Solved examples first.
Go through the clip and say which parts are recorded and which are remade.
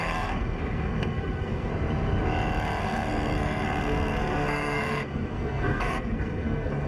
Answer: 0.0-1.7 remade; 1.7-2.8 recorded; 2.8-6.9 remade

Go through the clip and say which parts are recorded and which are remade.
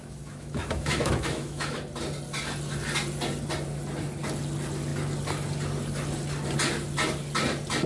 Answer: 0.0-1.8 remade; 1.8-7.9 recorded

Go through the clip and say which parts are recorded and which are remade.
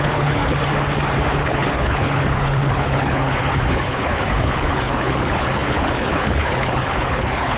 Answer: 0.0-0.4 remade; 0.4-1.3 recorded; 1.3-7.6 remade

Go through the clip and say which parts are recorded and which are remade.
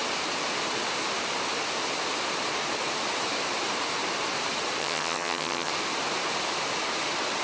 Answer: 0.0-4.8 recorded; 4.8-5.7 remade; 5.7-7.4 recorded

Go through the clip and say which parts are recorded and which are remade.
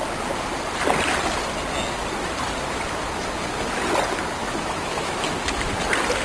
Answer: 0.0-4.4 recorded; 4.4-5.3 remade; 5.3-6.2 recorded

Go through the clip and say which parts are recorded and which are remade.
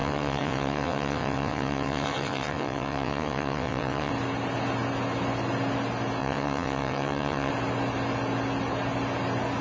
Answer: 0.0-4.1 remade; 4.1-6.2 recorded; 6.2-7.5 remade; 7.5-9.6 recorded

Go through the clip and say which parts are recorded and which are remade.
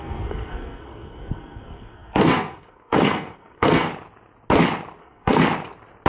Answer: 0.0-3.9 remade; 3.9-5.0 recorded; 5.0-5.4 remade; 5.4-6.1 recorded